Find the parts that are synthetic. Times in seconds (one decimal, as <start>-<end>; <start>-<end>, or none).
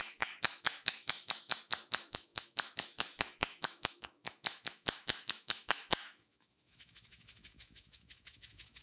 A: 0.0-8.8